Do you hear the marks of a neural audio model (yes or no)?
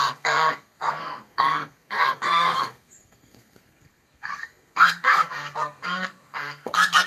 yes